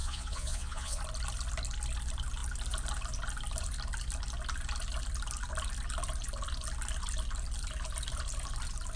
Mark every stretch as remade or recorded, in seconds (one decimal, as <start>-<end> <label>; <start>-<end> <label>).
0.0-1.0 remade; 1.0-9.0 recorded